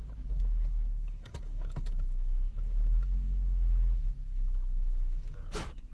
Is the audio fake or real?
fake